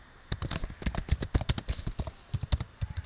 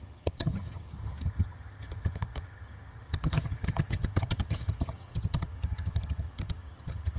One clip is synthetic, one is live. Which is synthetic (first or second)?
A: second